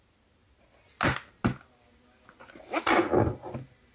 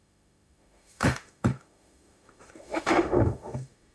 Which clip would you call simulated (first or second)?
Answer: second